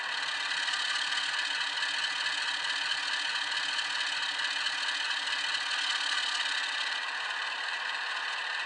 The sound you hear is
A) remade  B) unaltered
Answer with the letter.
B